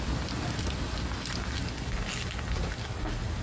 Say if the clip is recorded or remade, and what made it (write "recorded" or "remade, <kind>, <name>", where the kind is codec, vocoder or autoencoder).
recorded